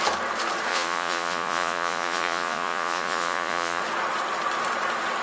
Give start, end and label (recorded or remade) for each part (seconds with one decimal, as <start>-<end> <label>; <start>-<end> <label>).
0.0-0.7 recorded; 0.7-3.8 remade; 3.8-5.2 recorded